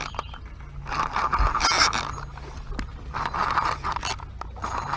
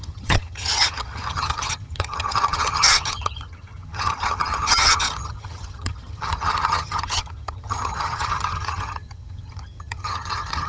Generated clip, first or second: second